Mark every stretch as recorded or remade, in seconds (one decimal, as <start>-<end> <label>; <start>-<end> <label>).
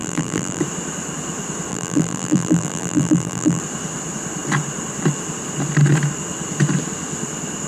0.0-0.6 remade; 0.6-1.7 recorded; 1.7-3.6 remade; 3.6-7.7 recorded